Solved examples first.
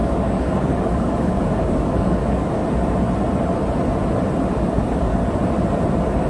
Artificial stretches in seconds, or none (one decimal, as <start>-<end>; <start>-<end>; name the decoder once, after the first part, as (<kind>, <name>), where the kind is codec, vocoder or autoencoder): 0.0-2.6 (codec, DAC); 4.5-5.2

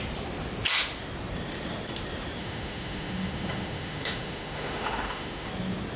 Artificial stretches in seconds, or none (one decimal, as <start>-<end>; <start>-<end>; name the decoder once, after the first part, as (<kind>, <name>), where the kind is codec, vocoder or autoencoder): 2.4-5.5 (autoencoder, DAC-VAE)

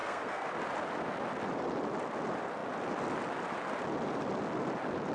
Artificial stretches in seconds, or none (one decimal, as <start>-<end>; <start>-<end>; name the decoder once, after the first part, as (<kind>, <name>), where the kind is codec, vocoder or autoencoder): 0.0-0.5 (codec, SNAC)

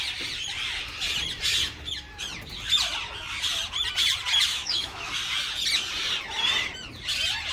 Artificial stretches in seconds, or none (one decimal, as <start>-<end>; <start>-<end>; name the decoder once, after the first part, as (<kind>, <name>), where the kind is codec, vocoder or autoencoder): 4.5-5.1 (autoencoder, DAC-VAE)

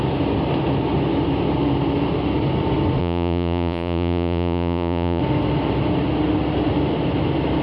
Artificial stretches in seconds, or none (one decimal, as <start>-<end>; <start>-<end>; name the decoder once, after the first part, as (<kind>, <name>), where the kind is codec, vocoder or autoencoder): 3.0-5.2 (vocoder, Vocos)

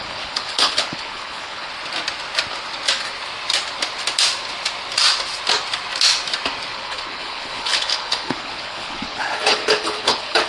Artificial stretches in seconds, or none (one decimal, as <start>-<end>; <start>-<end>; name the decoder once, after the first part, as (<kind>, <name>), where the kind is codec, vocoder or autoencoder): 0.0-1.7 (codec, HILCodec); 6.7-10.5